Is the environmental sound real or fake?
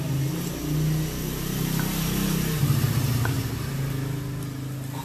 real